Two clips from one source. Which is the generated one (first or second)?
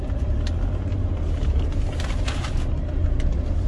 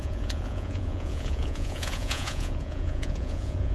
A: second